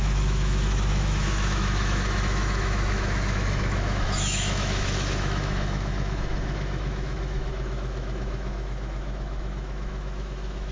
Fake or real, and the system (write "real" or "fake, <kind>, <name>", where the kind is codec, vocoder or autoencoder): fake, autoencoder, DAC-VAE